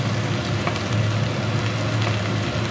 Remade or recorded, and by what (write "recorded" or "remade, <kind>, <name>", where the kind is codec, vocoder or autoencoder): recorded